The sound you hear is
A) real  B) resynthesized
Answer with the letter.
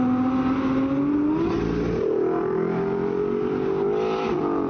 A